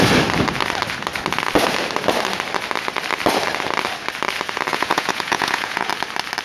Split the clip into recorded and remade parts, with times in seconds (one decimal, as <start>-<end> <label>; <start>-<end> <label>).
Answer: 0.0-4.7 recorded; 4.7-5.9 remade; 5.9-6.4 recorded